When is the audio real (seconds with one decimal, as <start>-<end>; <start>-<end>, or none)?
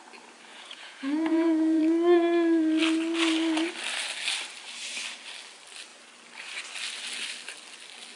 0.0-0.5; 1.8-8.2